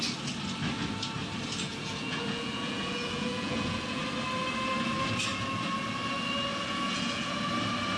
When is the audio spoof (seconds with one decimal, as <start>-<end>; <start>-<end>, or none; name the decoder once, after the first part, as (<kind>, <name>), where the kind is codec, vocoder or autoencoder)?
1.7-4.0 (vocoder, Vocos); 6.5-7.5